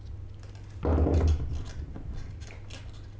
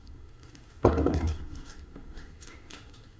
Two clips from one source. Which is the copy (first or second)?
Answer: second